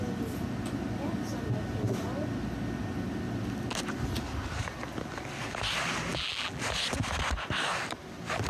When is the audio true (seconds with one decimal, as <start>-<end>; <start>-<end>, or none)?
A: 0.0-6.1; 6.6-8.5

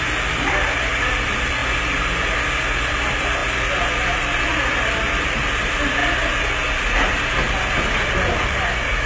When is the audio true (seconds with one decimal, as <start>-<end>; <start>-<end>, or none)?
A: 1.6-2.9; 3.4-4.5; 6.0-8.2

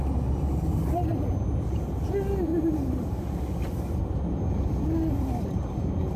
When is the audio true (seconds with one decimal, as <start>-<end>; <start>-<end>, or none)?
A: 0.0-2.5; 3.3-6.2

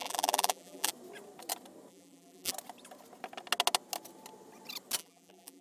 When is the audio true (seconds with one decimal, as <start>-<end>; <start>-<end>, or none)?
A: 0.9-1.9; 2.5-5.0